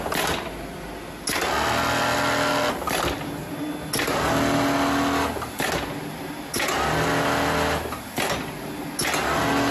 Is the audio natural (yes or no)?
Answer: yes